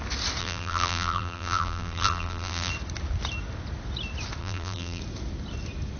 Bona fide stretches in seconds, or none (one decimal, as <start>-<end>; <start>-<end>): 0.0-0.4; 2.7-4.4; 5.0-6.0

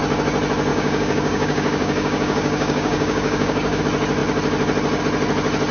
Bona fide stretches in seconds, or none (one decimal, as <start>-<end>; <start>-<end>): 0.0-0.7; 3.8-5.7

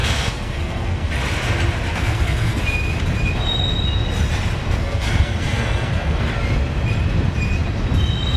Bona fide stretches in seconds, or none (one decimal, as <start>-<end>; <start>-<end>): 1.1-1.9; 2.6-4.6; 6.3-8.4

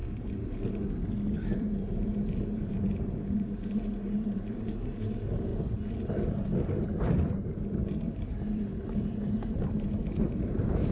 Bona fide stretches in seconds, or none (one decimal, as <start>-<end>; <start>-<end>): 0.0-1.5; 5.5-7.4